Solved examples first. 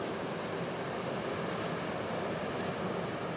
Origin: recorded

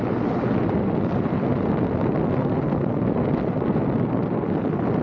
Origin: recorded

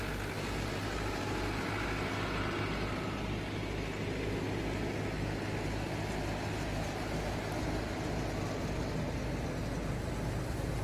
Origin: recorded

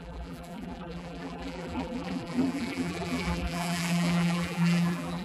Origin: remade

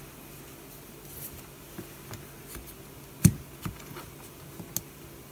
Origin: recorded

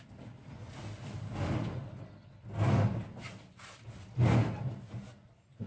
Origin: recorded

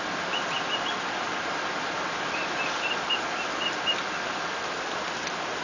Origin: recorded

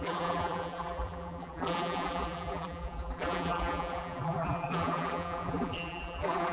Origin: remade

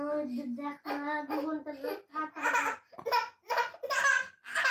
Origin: recorded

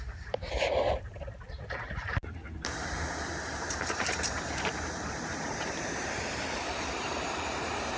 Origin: remade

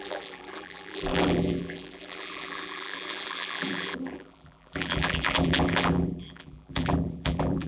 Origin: remade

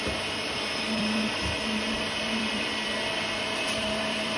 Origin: remade